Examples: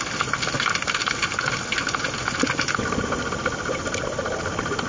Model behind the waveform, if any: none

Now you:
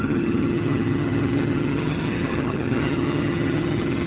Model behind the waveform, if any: vocoder, HiFi-GAN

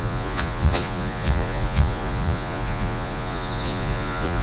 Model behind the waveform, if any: vocoder, Vocos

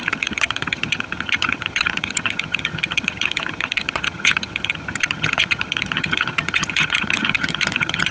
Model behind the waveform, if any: vocoder, HiFi-GAN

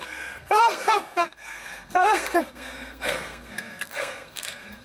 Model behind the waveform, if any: codec, SNAC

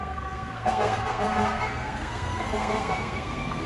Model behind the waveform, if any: codec, SNAC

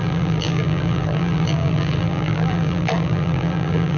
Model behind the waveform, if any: vocoder, BigVGAN v2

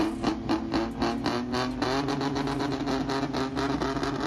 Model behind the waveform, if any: none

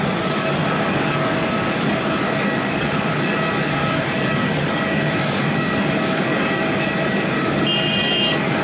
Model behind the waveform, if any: codec, DAC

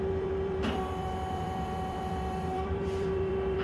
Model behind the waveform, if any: vocoder, BigVGAN v2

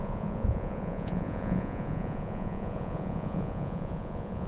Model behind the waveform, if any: vocoder, Vocos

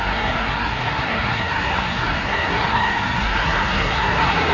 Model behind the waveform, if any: codec, SNAC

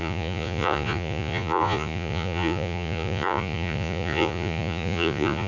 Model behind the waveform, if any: vocoder, Vocos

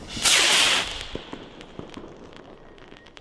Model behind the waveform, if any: none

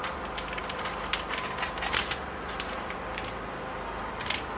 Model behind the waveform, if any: none